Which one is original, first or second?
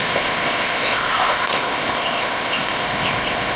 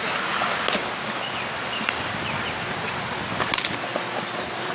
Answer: second